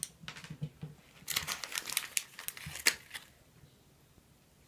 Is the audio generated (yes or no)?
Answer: no